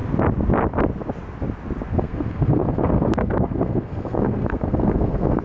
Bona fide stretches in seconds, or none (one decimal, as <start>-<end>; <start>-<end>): 0.0-1.9